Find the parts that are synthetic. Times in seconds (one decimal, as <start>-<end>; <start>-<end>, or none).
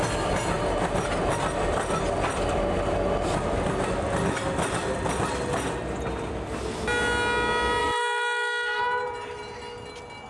7.8-8.8